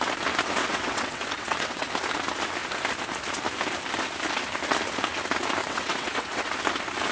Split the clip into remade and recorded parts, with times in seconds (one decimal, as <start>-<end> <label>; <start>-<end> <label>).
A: 0.0-0.6 recorded; 0.6-1.9 remade; 1.9-5.6 recorded; 5.6-6.5 remade; 6.5-7.1 recorded